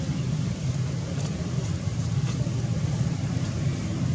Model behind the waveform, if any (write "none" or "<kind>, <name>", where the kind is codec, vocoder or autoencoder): vocoder, BigVGAN v2